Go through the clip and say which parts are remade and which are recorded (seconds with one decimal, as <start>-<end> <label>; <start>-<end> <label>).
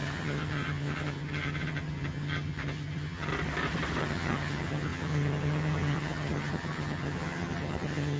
0.0-3.3 remade; 3.3-4.0 recorded; 4.0-8.2 remade